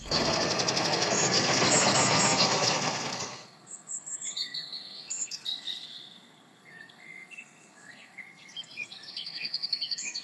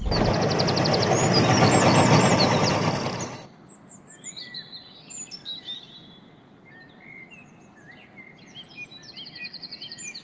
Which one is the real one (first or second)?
second